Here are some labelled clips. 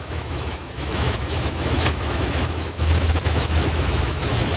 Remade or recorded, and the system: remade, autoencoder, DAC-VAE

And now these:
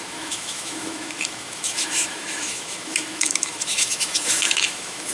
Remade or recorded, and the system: remade, autoencoder, DAC-VAE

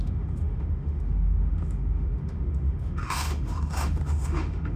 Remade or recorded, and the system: remade, autoencoder, DAC-VAE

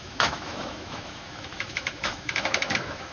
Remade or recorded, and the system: remade, autoencoder, DAC-VAE